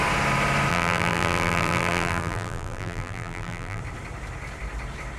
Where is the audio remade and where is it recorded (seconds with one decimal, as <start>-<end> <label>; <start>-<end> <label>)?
0.0-0.7 recorded; 0.7-3.8 remade; 3.8-5.2 recorded

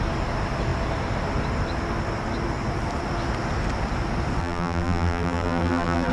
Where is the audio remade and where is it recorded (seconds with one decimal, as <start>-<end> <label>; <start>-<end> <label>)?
0.0-4.4 recorded; 4.4-6.1 remade

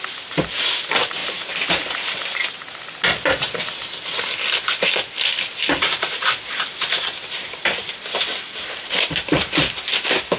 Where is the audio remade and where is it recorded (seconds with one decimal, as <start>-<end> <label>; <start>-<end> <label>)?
0.0-1.2 remade; 1.2-4.9 recorded; 4.9-10.4 remade

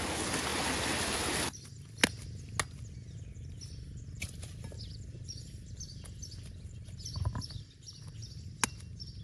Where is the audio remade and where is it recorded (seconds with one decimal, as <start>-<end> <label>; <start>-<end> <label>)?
0.0-9.2 recorded

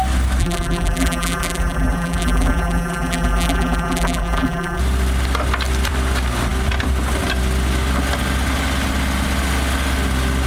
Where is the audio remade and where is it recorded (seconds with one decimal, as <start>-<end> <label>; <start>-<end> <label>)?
0.0-0.4 recorded; 0.4-4.8 remade; 4.8-10.5 recorded

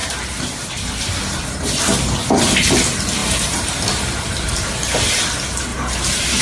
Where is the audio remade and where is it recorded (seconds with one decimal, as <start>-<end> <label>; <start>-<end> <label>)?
0.0-0.7 remade; 0.7-3.2 recorded; 3.2-5.0 remade; 5.0-5.7 recorded; 5.7-6.4 remade